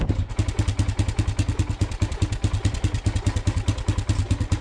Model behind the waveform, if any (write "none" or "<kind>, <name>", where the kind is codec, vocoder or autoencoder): none